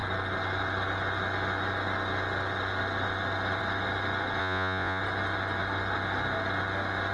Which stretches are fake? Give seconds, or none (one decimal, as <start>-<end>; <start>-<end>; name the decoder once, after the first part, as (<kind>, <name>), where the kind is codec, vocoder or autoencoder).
4.4-5.0 (vocoder, Vocos)

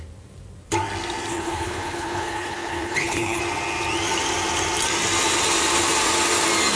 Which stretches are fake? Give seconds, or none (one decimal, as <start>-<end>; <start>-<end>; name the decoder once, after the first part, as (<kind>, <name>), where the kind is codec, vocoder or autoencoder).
1.3-3.4 (codec, HILCodec)